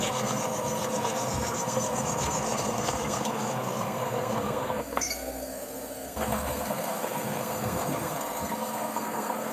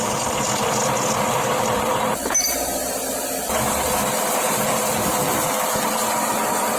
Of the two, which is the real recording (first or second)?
second